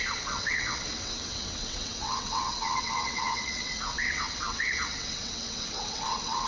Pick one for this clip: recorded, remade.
remade